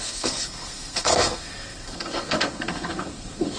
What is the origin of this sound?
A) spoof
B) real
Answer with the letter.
A